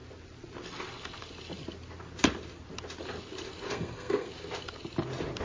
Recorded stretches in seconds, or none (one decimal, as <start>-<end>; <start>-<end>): 0.0-3.7; 4.3-5.4